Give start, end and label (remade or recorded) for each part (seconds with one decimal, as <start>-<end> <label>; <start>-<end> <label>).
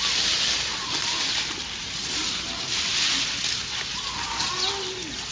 0.0-5.3 recorded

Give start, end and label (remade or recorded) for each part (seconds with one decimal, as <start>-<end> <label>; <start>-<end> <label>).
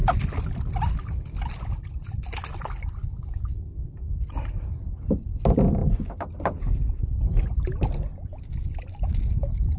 0.0-9.8 recorded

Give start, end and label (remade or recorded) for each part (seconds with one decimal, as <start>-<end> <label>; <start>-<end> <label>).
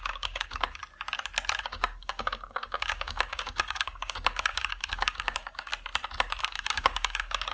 0.0-0.8 remade; 0.8-1.6 recorded; 1.6-5.7 remade; 5.7-6.4 recorded; 6.4-7.5 remade